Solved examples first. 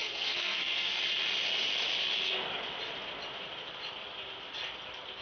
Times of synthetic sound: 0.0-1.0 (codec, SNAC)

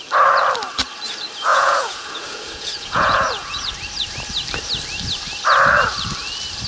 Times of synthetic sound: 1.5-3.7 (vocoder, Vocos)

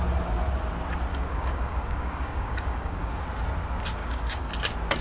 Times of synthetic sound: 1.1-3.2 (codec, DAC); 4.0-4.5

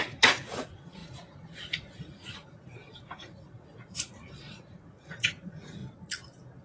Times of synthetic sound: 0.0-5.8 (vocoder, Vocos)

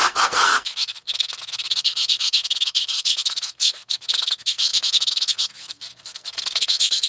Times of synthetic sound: 0.0-7.1 (codec, SNAC)

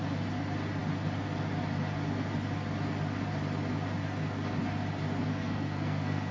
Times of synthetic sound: 5.3-6.3 (codec, SNAC)